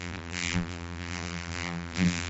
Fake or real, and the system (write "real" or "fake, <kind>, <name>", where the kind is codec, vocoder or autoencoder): fake, vocoder, BigVGAN v2